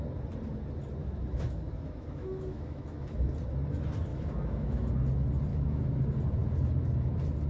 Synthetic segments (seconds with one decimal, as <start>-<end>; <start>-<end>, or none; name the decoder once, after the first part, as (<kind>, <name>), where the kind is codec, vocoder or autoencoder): 1.0-3.3 (autoencoder, DAC-VAE); 4.1-4.9; 5.5-6.0

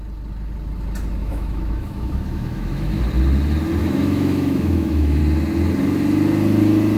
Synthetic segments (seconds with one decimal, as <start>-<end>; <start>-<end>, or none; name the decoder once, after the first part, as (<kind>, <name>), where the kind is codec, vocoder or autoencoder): 1.2-3.0 (autoencoder, DAC-VAE); 3.8-5.2